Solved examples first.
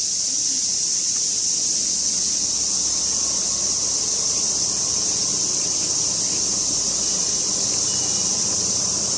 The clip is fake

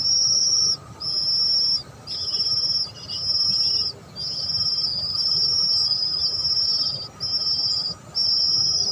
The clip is real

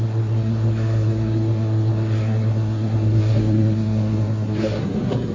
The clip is fake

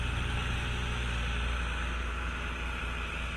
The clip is real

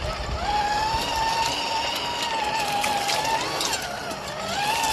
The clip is real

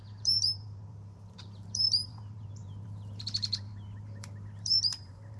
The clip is fake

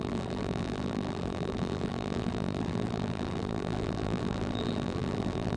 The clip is fake